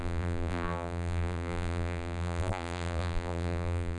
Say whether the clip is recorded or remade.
remade